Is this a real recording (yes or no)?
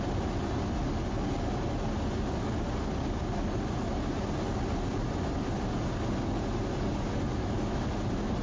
yes